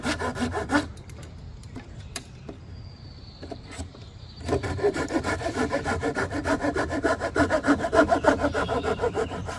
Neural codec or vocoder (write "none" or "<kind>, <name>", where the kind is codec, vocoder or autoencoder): vocoder, BigVGAN v2